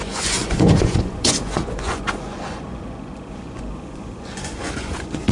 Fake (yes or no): yes